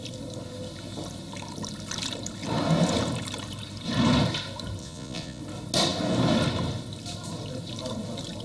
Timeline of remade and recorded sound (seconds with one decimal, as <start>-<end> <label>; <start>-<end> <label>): 0.0-4.8 recorded; 4.8-5.4 remade; 5.4-8.4 recorded